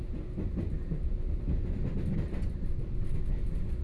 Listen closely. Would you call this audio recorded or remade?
recorded